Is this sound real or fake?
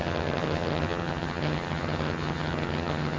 fake